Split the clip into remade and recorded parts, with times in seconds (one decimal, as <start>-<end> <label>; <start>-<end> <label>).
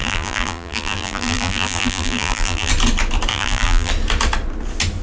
0.0-2.7 remade; 2.7-3.3 recorded; 3.3-3.9 remade; 3.9-5.0 recorded